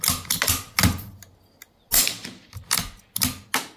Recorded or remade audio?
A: recorded